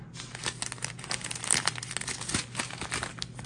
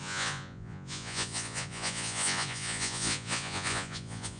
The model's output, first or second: second